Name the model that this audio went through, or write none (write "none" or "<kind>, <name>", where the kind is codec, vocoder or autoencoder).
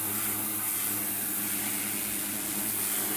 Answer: none